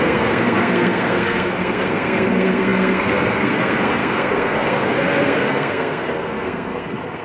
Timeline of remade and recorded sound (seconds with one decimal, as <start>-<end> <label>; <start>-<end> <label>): 0.0-7.2 remade